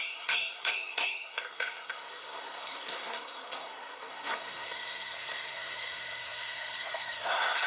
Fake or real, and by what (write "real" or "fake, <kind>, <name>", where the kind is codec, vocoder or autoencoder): fake, codec, SNAC